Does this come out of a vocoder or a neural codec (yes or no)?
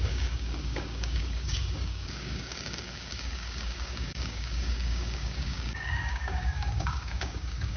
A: yes